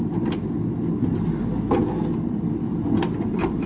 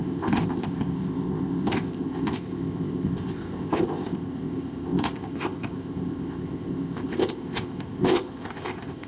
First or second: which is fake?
second